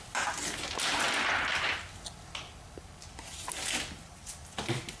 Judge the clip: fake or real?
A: real